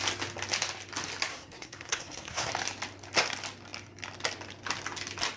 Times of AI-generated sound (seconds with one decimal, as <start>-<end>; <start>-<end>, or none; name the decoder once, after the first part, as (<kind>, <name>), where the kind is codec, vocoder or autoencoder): 1.3-2.5 (codec, SNAC)